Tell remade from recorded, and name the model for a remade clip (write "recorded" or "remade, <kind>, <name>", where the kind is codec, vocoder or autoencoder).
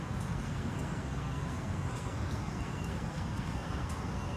remade, codec, SNAC